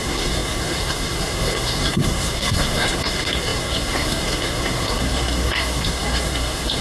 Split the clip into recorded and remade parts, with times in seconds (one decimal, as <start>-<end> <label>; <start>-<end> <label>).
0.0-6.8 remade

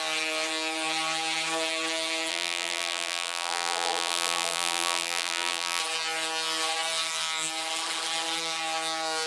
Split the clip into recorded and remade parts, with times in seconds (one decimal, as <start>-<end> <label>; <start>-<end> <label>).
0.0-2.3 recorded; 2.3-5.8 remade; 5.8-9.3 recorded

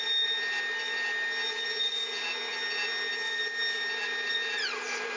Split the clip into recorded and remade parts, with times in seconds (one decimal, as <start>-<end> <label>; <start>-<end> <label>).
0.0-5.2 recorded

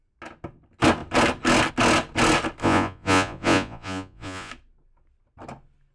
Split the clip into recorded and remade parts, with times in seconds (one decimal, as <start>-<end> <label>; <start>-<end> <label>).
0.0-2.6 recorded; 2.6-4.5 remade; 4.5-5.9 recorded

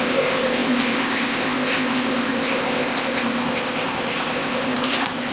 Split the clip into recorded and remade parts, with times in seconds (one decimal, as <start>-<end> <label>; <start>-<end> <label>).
0.0-5.3 remade

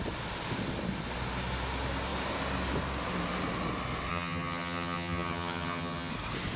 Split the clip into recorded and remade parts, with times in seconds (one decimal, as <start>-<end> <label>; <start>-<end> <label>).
0.0-4.1 recorded; 4.1-6.1 remade; 6.1-6.6 recorded

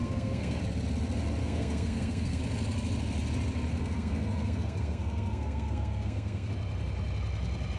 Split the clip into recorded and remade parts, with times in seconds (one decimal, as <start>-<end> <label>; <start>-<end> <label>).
0.0-0.6 remade; 0.6-1.4 recorded; 1.4-2.4 remade; 2.4-3.7 recorded; 3.7-6.5 remade; 6.5-7.8 recorded